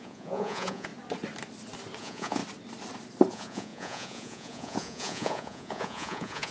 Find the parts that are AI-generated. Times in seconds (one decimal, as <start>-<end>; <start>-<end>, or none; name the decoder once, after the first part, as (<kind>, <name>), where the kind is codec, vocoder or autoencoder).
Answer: 0.0-0.9 (vocoder, Vocos); 2.0-2.4; 3.3-6.5